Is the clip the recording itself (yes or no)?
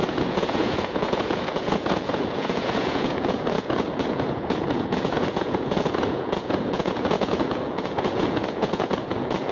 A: no